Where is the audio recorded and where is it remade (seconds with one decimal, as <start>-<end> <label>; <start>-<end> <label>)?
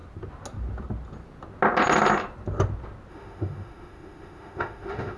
0.0-3.1 recorded; 3.1-5.2 remade